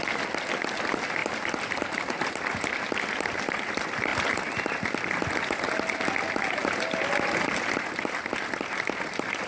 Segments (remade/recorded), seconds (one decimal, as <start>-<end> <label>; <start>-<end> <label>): 0.0-9.5 recorded